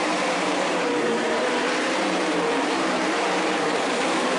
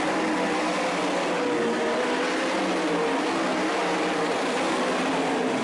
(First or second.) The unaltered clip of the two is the second